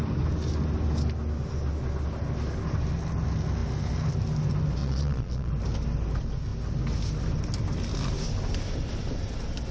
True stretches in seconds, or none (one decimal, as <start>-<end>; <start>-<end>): 0.0-4.8; 5.5-9.7